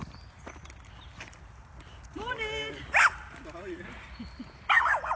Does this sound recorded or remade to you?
recorded